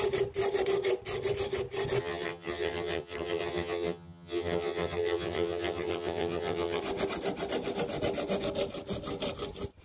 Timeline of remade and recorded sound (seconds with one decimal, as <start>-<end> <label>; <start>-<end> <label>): 0.0-2.0 recorded; 2.0-6.8 remade; 6.8-9.8 recorded